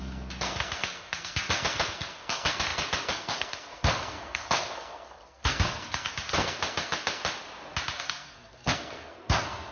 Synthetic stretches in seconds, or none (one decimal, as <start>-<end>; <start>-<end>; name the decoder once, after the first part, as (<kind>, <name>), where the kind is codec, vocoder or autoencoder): 0.0-7.2 (codec, SNAC); 8.0-9.7